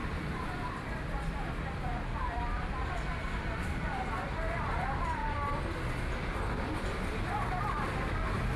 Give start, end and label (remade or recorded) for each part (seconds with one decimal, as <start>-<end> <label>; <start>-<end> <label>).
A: 0.0-8.6 remade